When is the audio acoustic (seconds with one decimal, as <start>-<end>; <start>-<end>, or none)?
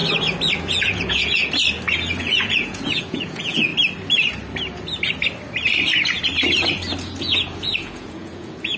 0.0-0.6; 1.4-2.2; 3.7-7.2